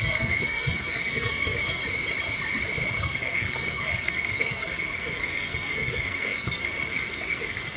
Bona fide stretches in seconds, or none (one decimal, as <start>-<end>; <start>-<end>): 1.8-2.9